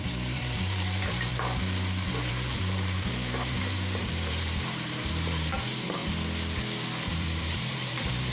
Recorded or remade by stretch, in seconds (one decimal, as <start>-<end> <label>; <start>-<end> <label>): 0.0-1.3 remade; 1.3-2.3 recorded; 2.3-6.0 remade; 6.0-7.1 recorded; 7.1-8.3 remade